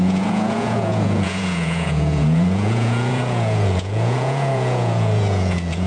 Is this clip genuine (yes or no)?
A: no